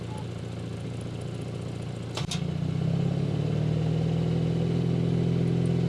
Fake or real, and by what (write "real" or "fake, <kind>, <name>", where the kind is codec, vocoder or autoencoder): real